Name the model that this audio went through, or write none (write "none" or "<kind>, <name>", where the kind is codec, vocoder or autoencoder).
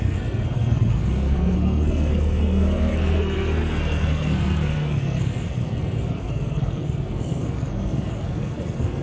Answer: codec, SNAC